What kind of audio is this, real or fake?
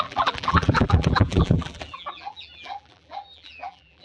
fake